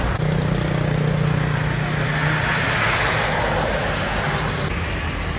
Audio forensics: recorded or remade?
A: recorded